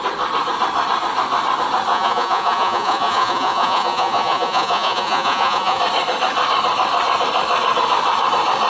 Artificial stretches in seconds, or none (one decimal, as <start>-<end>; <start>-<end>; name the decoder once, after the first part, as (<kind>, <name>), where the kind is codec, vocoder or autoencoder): 1.9-5.8 (vocoder, Vocos)